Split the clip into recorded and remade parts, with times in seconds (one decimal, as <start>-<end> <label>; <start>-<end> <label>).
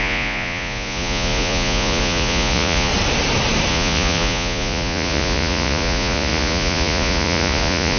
0.0-2.9 remade; 2.9-3.7 recorded; 3.7-8.0 remade